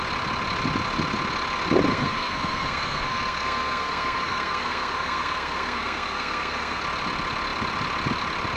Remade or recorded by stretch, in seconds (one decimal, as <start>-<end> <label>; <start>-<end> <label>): 0.0-1.9 recorded; 1.9-6.8 remade; 6.8-8.6 recorded